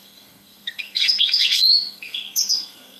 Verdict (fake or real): fake